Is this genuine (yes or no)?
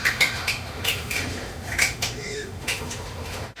no